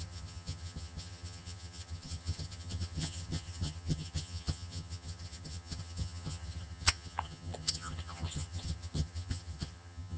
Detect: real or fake fake